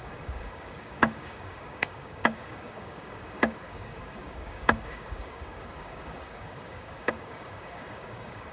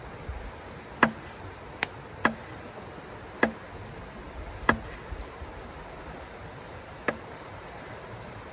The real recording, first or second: second